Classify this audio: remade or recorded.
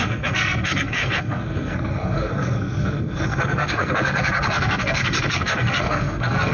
remade